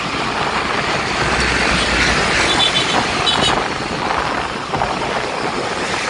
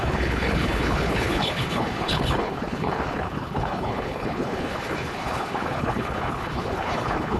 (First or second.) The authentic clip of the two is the first